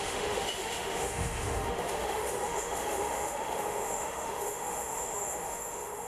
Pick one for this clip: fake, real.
fake